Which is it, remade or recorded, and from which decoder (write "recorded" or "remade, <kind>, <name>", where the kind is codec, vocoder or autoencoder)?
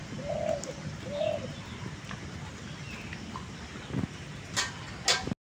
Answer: recorded